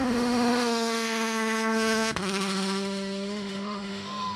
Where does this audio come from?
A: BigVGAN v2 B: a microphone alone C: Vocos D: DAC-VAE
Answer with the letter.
D